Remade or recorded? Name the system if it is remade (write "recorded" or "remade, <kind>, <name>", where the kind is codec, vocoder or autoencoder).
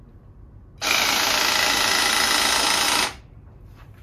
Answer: recorded